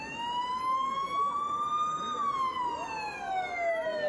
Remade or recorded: recorded